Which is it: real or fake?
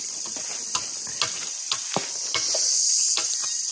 real